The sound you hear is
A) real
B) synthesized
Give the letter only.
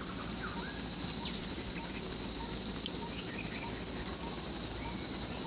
A